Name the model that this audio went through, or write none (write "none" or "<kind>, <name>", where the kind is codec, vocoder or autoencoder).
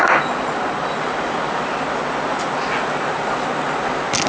none